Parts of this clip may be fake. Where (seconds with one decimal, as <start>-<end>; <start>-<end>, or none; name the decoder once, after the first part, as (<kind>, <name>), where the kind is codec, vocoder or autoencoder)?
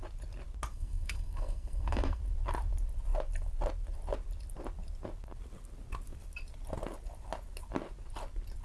0.7-2.2 (codec, SNAC)